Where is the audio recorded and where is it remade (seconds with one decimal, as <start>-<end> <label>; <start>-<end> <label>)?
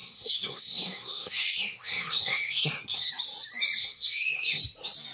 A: 0.0-3.1 remade; 3.1-3.8 recorded; 3.8-4.6 remade; 4.6-5.1 recorded